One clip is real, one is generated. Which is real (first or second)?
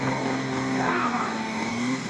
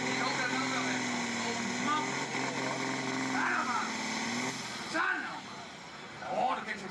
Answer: second